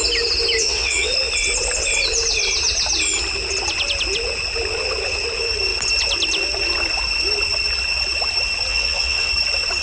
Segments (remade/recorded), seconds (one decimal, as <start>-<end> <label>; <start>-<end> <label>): 0.0-0.6 recorded; 0.6-1.1 remade; 1.1-8.7 recorded; 8.7-9.3 remade; 9.3-9.8 recorded